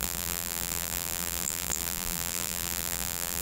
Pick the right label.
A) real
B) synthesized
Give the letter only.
B